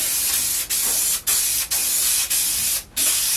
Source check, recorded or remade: recorded